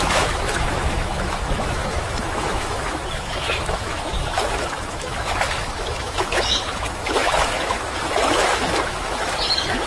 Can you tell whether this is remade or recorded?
remade